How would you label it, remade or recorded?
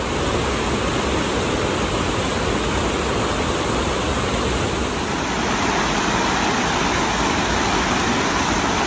recorded